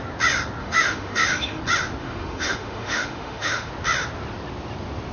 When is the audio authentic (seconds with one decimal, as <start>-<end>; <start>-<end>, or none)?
0.0-0.6; 1.6-2.0; 3.7-5.1

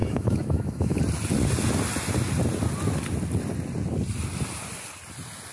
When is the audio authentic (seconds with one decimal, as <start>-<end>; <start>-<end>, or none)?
1.0-5.5